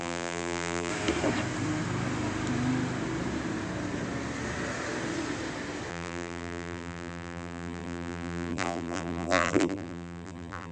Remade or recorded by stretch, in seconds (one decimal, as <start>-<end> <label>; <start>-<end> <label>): 0.0-0.9 remade; 0.9-5.9 recorded; 5.9-10.7 remade